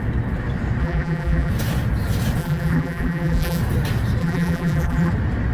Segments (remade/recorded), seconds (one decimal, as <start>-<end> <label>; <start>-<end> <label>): 0.0-0.8 recorded; 0.8-1.5 remade; 1.5-2.4 recorded; 2.4-3.6 remade; 3.6-4.2 recorded; 4.2-5.1 remade; 5.1-5.5 recorded

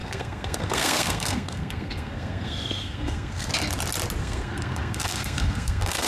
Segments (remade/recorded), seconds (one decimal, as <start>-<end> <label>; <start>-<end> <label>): 0.0-3.5 remade; 3.5-4.2 recorded; 4.2-6.1 remade